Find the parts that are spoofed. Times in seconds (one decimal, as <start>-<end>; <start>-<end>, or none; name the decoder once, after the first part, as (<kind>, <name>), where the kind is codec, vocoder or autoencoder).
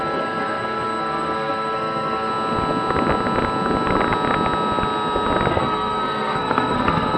0.0-2.3 (codec, SNAC); 5.5-7.2